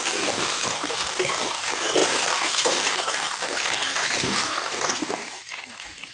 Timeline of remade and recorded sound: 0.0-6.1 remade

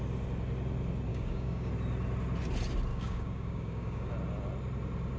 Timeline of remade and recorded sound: 0.0-1.1 recorded; 1.1-1.7 remade; 1.7-2.9 recorded; 2.9-4.1 remade; 4.1-5.2 recorded

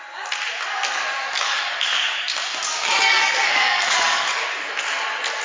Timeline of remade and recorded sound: 0.0-1.2 recorded; 1.2-4.4 remade; 4.4-5.4 recorded

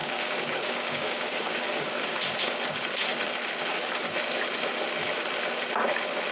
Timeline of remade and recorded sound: 0.0-2.2 remade; 2.2-6.3 recorded

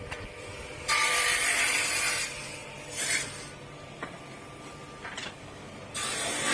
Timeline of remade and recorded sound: 0.0-5.2 recorded; 5.2-5.7 remade; 5.7-6.5 recorded